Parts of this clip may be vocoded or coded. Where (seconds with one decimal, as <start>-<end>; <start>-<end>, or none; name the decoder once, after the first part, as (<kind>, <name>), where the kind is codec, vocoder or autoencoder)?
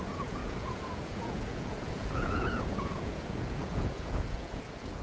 0.0-5.0 (vocoder, Vocos)